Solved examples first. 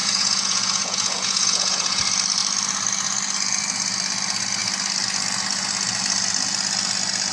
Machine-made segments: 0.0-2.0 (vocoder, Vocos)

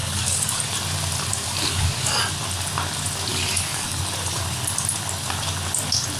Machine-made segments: 0.0-0.6 (codec, DAC); 1.3-2.2; 3.3-4.0

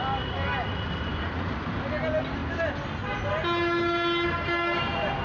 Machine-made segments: 1.1-1.9 (vocoder, BigVGAN v2)